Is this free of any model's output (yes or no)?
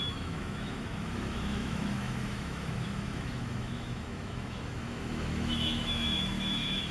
no